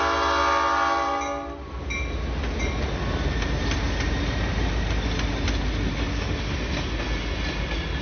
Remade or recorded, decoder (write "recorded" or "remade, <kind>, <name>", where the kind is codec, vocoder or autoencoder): recorded